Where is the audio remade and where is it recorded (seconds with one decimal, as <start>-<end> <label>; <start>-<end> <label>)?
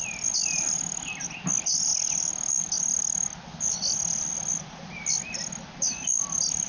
0.0-6.7 recorded